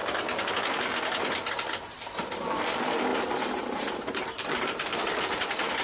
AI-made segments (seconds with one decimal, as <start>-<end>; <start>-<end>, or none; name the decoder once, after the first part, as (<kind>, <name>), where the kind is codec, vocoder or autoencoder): 3.1-5.2 (vocoder, BigVGAN v2)

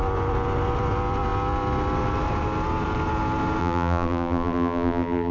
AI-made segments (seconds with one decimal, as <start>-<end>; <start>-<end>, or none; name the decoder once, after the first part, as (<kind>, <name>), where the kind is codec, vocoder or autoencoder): 3.6-5.3 (vocoder, BigVGAN v2)

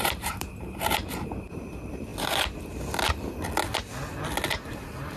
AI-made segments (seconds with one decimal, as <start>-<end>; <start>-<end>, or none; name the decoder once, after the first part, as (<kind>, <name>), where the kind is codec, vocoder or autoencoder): 0.0-2.1 (vocoder, BigVGAN v2); 4.7-5.2

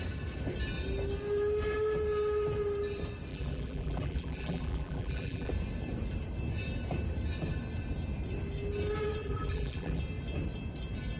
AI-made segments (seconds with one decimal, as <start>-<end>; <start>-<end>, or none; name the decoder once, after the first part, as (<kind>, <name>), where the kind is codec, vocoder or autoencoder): 3.3-5.5 (vocoder, BigVGAN v2); 9.2-10.0

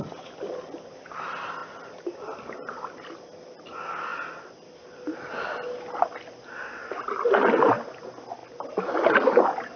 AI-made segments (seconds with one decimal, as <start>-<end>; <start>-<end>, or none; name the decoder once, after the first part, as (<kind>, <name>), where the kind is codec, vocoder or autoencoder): none